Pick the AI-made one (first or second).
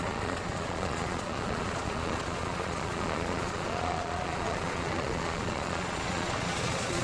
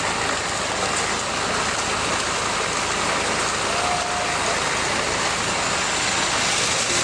first